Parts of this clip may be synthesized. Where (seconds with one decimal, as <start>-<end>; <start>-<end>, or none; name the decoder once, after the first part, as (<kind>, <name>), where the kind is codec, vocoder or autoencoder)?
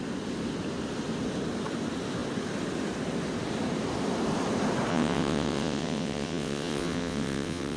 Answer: 4.9-7.8 (vocoder, WaveNeXt)